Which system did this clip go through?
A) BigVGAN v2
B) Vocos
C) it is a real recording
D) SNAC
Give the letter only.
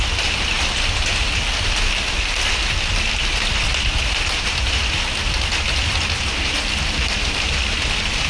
C